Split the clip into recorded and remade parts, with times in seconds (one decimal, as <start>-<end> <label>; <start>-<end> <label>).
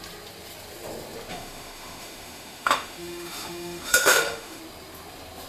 0.0-1.3 recorded; 1.3-4.6 remade; 4.6-5.5 recorded